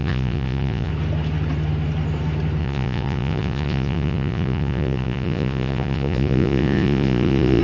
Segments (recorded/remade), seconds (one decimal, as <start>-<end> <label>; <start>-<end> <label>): 0.0-0.9 remade; 0.9-2.6 recorded; 2.6-7.6 remade